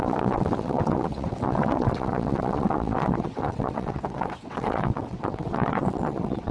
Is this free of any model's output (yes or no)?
no